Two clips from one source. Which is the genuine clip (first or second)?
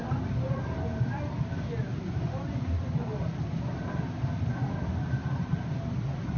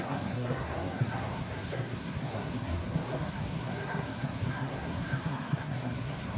first